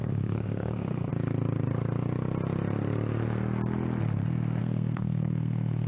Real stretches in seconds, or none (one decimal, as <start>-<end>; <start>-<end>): 1.1-4.6